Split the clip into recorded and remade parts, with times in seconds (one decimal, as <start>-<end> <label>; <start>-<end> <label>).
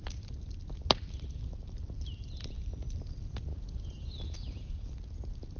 0.0-3.5 recorded; 3.5-4.9 remade; 4.9-5.6 recorded